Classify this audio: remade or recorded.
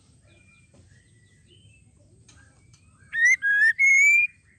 remade